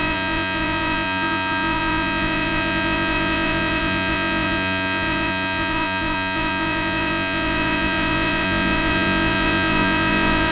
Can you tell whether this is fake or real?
fake